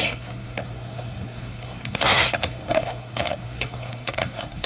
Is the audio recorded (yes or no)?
no